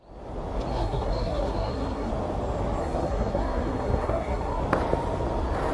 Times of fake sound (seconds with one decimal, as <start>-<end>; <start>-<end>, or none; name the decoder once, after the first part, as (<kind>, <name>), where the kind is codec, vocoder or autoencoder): 0.7-2.1 (codec, SNAC); 2.8-4.6